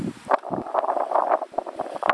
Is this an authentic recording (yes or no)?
no